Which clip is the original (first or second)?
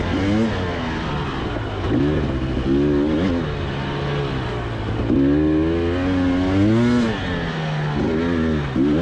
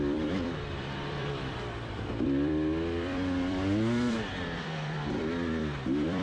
first